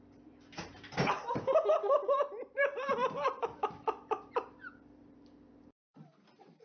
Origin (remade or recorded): remade